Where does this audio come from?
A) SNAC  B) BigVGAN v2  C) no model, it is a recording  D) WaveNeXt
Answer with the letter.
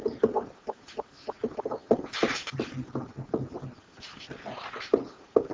C